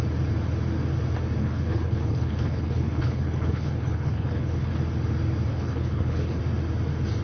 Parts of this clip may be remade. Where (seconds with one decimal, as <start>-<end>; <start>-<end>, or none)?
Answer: 1.4-4.7; 5.5-6.4